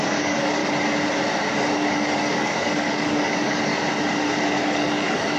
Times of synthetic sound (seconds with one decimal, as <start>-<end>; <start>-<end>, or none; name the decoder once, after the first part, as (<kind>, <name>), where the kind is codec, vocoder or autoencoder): 0.0-0.6 (codec, DAC); 1.9-3.7; 4.6-5.4